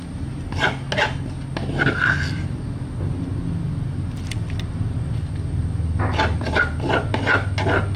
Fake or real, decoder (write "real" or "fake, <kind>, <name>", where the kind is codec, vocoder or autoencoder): real